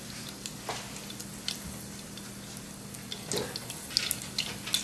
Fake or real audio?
real